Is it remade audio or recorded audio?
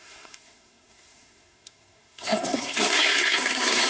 remade